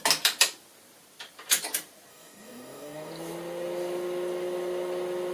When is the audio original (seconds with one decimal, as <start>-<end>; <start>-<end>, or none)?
0.0-2.1; 3.1-5.3